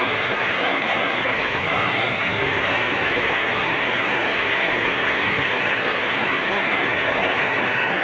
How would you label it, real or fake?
fake